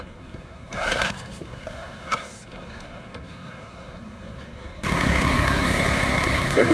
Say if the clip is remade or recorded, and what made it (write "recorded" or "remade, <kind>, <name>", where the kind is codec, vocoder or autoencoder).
remade, codec, SNAC